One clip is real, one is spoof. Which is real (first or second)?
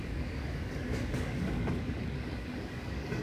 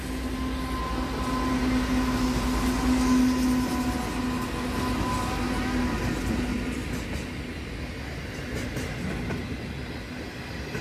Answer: second